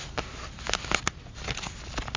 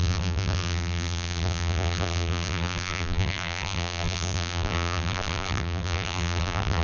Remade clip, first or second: second